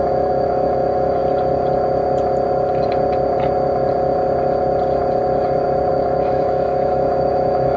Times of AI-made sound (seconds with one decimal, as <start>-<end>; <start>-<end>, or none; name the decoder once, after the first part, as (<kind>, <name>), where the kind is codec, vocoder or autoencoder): 0.0-1.2 (autoencoder, DAC-VAE); 5.9-7.8